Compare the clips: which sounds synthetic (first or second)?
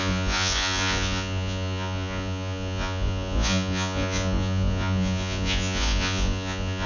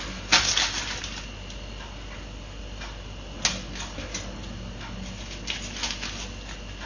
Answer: first